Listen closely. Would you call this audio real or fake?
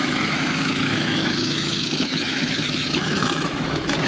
fake